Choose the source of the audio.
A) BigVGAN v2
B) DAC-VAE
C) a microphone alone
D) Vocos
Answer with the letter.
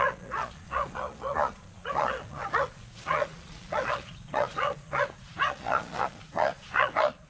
D